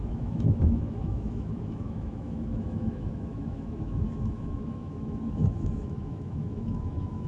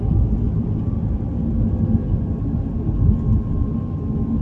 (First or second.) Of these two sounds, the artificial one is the first